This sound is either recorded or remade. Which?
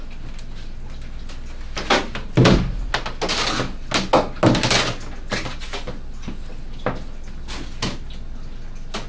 recorded